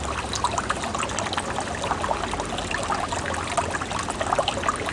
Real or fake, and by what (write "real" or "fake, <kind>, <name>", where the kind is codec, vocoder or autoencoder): real